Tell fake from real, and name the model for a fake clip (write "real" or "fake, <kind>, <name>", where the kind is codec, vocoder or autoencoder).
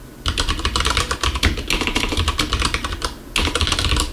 real